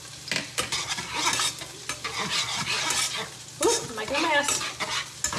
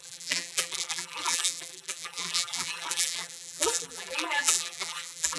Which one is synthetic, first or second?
second